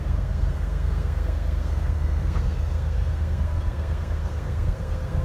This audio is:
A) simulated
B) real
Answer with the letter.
A